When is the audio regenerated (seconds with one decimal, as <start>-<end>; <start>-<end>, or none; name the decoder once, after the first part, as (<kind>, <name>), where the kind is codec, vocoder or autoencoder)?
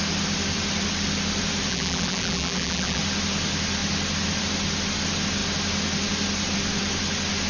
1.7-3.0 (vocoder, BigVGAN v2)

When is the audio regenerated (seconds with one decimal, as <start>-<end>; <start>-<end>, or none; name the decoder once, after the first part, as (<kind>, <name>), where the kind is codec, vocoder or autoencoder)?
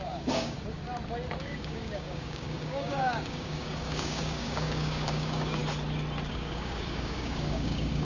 0.0-0.8 (codec, DAC); 1.4-5.6; 6.3-8.0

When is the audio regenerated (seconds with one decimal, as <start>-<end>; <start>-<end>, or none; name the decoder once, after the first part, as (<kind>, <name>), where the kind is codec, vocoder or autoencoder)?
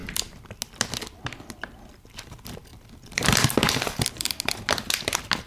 none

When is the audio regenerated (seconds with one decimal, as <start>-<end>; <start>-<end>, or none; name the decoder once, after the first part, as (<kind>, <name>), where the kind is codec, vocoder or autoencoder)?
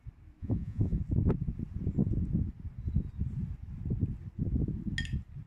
0.4-1.0 (vocoder, Vocos)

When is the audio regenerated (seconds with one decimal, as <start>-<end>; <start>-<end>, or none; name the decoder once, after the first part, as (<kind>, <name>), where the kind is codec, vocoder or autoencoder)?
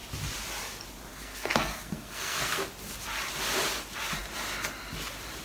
1.1-2.7 (codec, SNAC)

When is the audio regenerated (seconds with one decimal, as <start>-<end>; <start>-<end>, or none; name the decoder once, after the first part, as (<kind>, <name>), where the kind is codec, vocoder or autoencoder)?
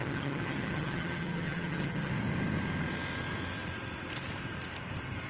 0.0-2.1 (vocoder, HiFi-GAN)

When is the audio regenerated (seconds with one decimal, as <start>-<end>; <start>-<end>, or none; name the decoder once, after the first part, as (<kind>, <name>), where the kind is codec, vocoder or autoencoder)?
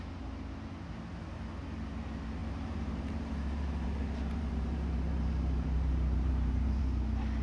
2.4-6.8 (vocoder, BigVGAN v2)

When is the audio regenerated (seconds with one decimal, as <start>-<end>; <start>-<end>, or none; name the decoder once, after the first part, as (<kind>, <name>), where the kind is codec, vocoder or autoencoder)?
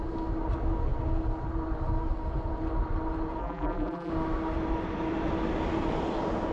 3.4-4.1 (vocoder, BigVGAN v2)